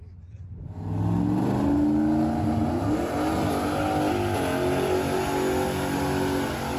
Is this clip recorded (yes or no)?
yes